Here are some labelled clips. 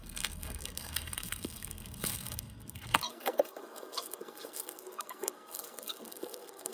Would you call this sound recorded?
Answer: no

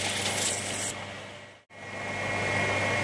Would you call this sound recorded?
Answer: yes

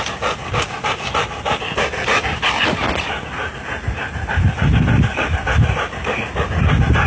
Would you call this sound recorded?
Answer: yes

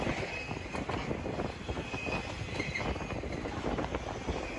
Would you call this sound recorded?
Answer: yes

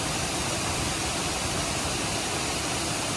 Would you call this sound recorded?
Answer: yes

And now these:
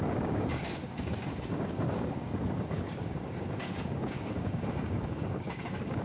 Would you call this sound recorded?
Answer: no